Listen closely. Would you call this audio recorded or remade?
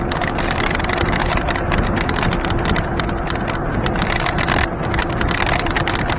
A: recorded